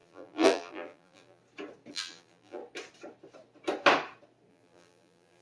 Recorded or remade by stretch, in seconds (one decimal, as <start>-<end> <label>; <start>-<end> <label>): 0.0-1.4 remade; 1.4-1.9 recorded; 1.9-2.6 remade; 2.6-4.5 recorded; 4.5-5.4 remade